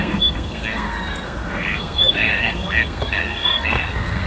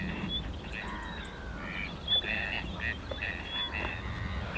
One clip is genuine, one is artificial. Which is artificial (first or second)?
first